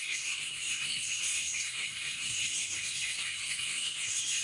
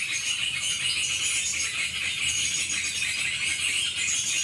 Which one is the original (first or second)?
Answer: second